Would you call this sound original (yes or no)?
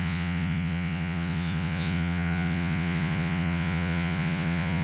no